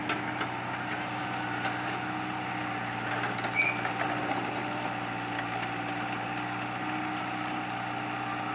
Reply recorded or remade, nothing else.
recorded